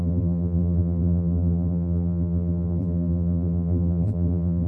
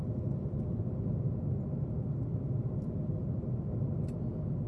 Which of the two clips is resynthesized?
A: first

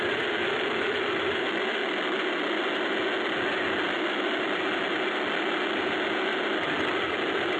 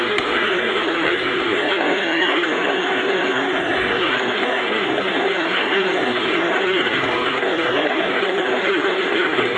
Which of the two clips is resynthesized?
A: second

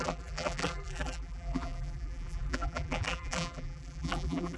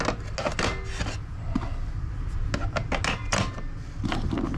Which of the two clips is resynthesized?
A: first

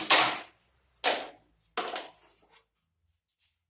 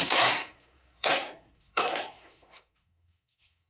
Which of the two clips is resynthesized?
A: second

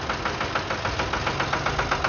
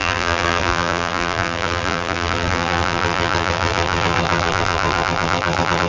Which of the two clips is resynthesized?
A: second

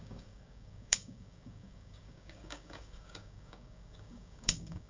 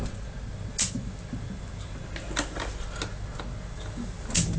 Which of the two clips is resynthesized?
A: first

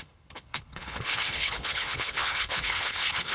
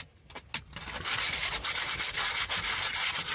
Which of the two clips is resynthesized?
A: first